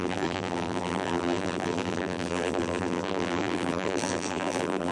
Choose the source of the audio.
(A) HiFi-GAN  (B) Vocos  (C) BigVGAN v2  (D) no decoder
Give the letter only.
C